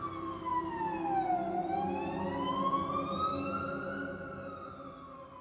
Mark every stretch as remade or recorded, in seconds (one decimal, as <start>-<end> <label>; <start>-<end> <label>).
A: 0.0-5.4 recorded